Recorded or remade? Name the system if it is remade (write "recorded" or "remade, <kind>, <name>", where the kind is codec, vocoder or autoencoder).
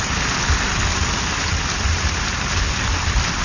recorded